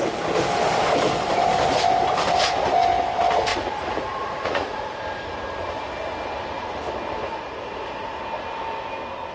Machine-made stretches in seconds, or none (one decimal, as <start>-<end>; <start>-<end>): 3.5-5.0; 7.2-8.2